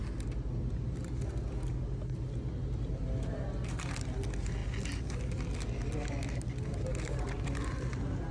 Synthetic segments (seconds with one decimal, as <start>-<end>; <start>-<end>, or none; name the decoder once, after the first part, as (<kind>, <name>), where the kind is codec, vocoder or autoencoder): none